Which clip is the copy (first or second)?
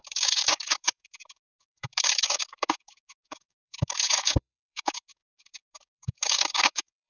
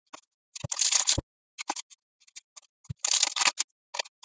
first